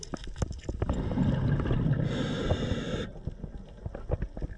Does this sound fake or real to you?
real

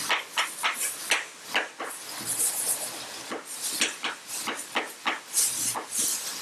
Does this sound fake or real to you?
real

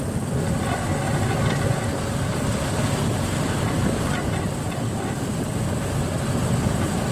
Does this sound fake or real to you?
real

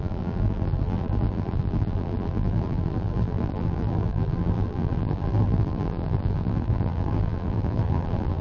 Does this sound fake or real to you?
fake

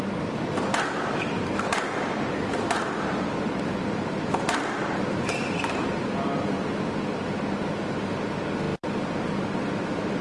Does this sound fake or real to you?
fake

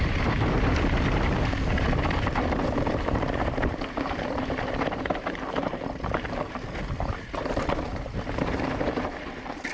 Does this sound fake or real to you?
fake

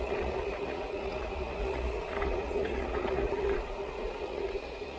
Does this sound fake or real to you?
fake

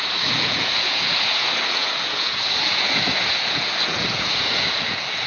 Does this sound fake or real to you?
fake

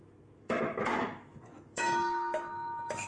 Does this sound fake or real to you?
fake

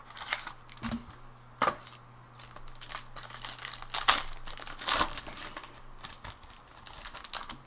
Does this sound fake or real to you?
real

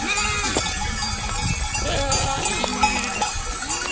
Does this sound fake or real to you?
real